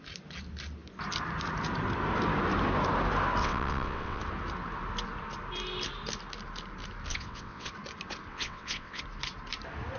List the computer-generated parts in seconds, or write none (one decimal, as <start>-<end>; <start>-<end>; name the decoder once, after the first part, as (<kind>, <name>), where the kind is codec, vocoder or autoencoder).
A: 3.4-4.2 (vocoder, WaveNeXt); 7.1-7.7; 8.3-9.0